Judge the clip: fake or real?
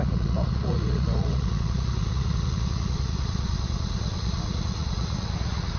fake